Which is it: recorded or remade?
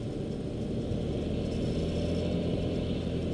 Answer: recorded